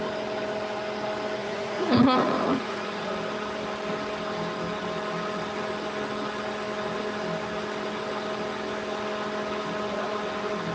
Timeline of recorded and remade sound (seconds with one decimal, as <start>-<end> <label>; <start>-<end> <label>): 0.0-1.4 recorded; 1.4-3.1 remade; 3.1-10.7 recorded

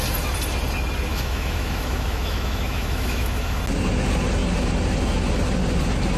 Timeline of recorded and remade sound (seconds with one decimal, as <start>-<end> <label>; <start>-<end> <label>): 0.0-1.1 recorded; 1.1-3.6 remade; 3.6-6.2 recorded

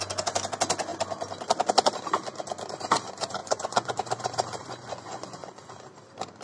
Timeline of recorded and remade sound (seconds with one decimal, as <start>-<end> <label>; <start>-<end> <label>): 0.0-3.4 recorded; 3.4-4.0 remade; 4.0-4.6 recorded; 4.6-5.7 remade; 5.7-6.4 recorded

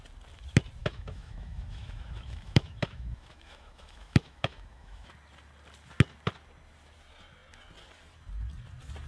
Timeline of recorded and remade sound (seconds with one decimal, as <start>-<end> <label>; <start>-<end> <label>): 0.0-0.8 recorded; 0.8-5.1 remade; 5.1-9.1 recorded

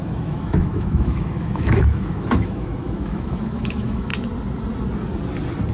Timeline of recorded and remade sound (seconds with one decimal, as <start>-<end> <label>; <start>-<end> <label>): 0.0-4.1 remade; 4.1-5.7 recorded